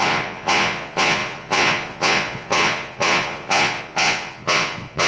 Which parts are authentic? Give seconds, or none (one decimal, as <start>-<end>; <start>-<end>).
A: none